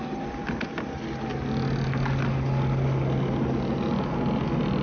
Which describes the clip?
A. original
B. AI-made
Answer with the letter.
A